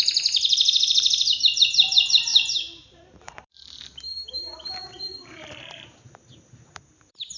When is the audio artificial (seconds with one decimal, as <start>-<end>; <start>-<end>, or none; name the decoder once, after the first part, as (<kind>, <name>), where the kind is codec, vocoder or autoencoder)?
0.0-7.4 (vocoder, BigVGAN v2)